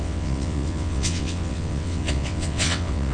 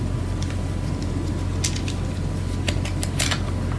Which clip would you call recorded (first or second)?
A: second